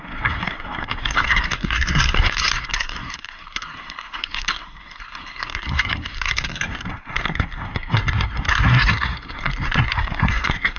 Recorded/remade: remade